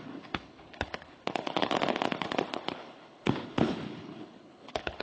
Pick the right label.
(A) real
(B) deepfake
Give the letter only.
B